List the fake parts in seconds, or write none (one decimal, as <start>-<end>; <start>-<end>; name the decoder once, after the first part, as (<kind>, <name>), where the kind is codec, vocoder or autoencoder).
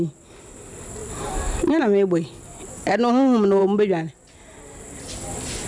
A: 1.0-1.8 (vocoder, BigVGAN v2)